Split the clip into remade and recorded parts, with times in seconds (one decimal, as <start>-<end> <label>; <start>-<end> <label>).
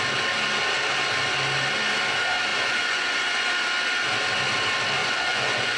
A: 0.0-2.5 recorded; 2.5-3.5 remade; 3.5-5.0 recorded; 5.0-5.8 remade